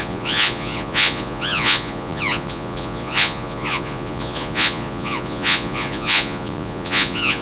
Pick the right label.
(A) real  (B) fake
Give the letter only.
B